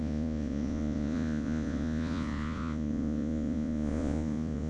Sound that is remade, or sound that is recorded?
remade